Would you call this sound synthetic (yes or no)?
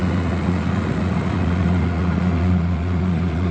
yes